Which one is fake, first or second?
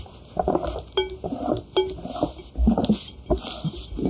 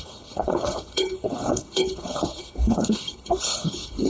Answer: second